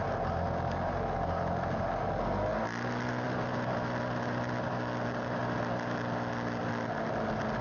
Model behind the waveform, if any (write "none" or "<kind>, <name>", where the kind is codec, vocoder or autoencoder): none